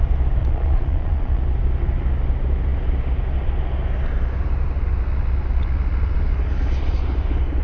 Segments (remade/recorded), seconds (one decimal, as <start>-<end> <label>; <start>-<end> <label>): 0.0-0.4 recorded; 0.4-1.4 remade; 1.4-7.6 recorded